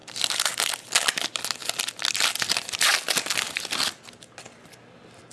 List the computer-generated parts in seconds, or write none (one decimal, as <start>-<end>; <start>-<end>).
none